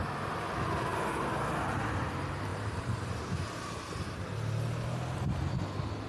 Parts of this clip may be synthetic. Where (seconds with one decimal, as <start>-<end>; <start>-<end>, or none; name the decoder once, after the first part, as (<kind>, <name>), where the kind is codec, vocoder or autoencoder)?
2.5-4.2 (vocoder, BigVGAN v2)

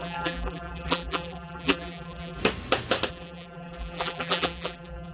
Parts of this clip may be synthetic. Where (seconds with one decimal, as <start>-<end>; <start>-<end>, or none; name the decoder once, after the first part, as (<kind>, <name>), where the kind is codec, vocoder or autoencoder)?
0.0-2.4 (vocoder, BigVGAN v2); 3.1-5.1